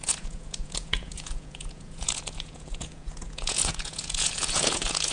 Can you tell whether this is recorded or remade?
remade